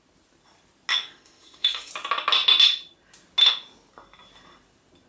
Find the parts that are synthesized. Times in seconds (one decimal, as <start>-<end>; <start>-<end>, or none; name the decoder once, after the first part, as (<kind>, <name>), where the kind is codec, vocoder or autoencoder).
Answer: 0.9-1.9 (autoencoder, DAC-VAE)